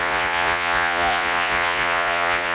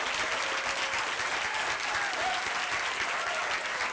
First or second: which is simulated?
first